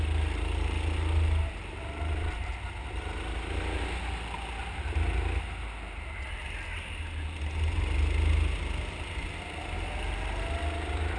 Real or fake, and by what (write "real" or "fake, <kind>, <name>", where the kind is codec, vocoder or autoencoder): real